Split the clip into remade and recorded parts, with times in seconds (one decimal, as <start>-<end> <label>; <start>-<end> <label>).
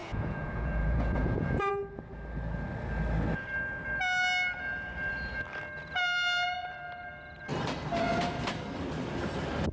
0.0-1.7 remade; 1.7-9.7 recorded